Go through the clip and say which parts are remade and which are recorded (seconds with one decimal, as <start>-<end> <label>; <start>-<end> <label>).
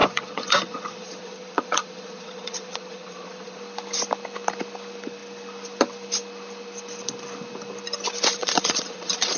0.0-3.6 remade; 3.6-8.4 recorded; 8.4-9.4 remade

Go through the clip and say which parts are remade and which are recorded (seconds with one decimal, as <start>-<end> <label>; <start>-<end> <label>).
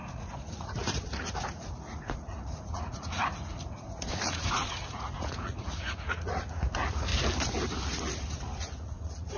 0.0-7.1 remade; 7.1-8.2 recorded; 8.2-9.4 remade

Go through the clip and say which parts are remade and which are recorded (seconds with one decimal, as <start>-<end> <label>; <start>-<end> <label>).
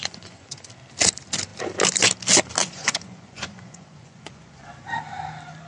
0.0-0.6 remade; 0.6-2.6 recorded; 2.6-4.7 remade; 4.7-5.7 recorded